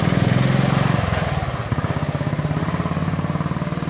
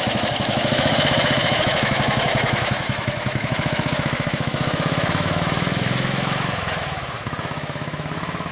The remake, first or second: second